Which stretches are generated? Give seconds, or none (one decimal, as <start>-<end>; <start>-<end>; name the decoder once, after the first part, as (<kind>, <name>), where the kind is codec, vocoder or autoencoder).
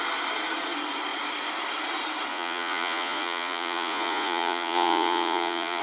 2.3-5.8 (vocoder, Vocos)